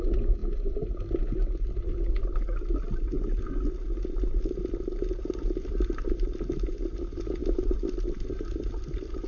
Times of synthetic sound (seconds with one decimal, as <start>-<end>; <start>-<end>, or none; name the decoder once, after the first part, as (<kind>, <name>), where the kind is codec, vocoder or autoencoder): none

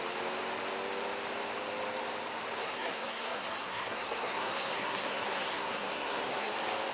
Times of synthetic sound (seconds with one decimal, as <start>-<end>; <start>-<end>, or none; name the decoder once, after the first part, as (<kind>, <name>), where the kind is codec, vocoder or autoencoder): 2.6-6.5 (codec, SNAC)

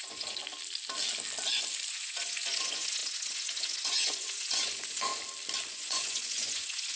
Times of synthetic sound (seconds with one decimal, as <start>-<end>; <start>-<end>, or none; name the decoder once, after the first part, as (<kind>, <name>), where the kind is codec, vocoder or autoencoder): 0.0-0.4 (vocoder, Vocos); 1.9-5.1; 5.7-7.0

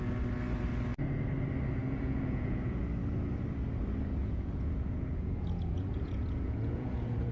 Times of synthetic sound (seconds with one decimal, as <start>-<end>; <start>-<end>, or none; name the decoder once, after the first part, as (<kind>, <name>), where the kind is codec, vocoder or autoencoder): 1.8-2.8 (vocoder, Vocos); 4.2-7.3

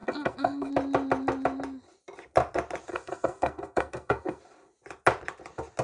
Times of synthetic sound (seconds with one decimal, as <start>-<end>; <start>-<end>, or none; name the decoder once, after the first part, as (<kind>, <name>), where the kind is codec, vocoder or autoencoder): 0.0-0.7 (codec, SNAC); 2.9-4.4

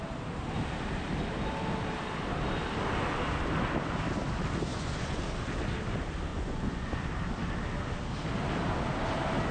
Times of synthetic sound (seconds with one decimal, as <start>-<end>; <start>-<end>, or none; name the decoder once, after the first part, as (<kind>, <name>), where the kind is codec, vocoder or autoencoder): 4.7-5.2 (vocoder, Vocos); 6.3-7.1